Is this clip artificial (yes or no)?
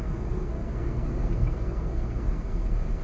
yes